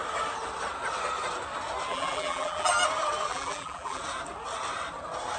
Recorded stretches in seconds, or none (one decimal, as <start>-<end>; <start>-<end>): 0.0-1.9; 2.7-3.3; 4.0-5.4